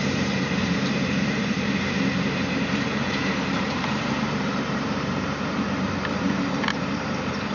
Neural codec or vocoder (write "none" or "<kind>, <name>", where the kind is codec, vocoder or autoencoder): vocoder, BigVGAN v2